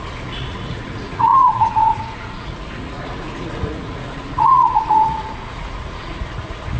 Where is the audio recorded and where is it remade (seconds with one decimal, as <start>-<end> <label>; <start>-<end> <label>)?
0.0-6.8 remade